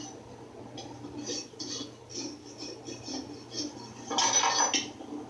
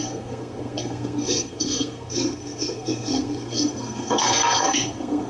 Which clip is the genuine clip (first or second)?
first